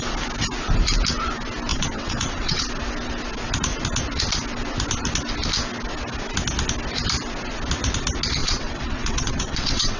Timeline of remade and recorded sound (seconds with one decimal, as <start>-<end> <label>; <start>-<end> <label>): 0.0-1.7 recorded; 1.7-2.6 remade; 2.6-8.4 recorded; 8.4-10.0 remade